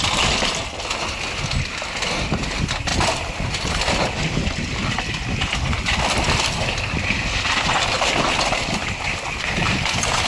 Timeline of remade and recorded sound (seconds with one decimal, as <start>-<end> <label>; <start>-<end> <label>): 0.0-10.3 recorded